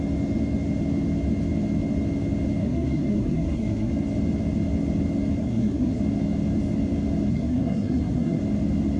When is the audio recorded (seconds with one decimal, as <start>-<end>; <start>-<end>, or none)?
0.0-2.6; 3.9-5.4; 6.0-7.3; 8.4-9.0